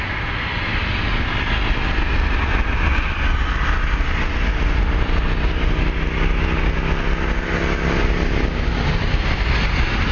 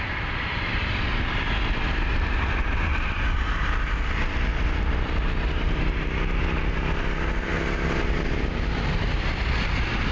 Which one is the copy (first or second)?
second